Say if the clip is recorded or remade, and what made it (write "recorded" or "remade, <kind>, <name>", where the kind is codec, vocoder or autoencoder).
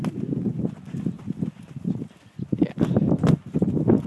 recorded